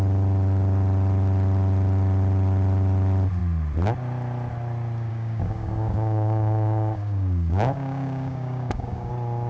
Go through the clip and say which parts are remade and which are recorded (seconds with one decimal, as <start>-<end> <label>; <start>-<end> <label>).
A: 0.0-5.1 recorded; 5.1-9.1 remade; 9.1-9.5 recorded